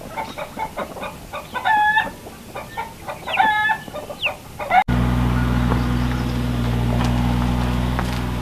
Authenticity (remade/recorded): recorded